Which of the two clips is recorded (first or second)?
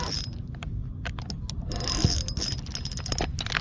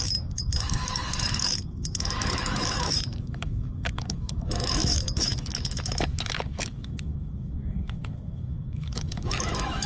first